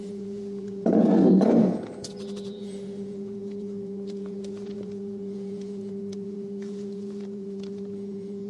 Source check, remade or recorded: remade